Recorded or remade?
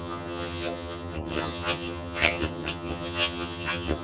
remade